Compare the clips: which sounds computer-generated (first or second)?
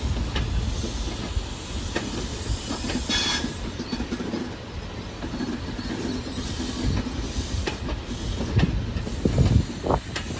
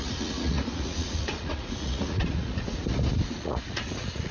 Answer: second